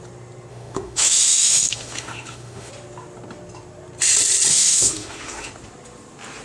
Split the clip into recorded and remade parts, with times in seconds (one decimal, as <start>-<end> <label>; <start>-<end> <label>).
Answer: 0.0-0.5 recorded; 0.5-2.7 remade; 2.7-4.5 recorded; 4.5-5.5 remade; 5.5-6.4 recorded